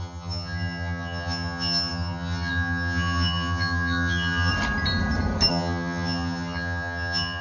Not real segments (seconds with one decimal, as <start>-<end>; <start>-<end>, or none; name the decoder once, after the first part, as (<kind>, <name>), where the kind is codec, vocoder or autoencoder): 0.0-4.5 (vocoder, HiFi-GAN); 5.5-7.4